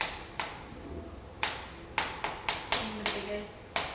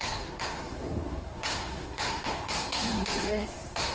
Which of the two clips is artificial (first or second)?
second